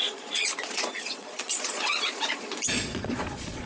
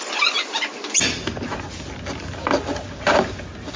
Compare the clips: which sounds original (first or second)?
second